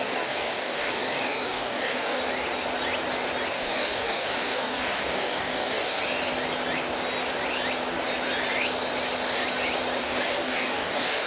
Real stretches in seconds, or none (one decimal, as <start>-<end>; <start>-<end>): 2.2-3.5; 6.0-10.0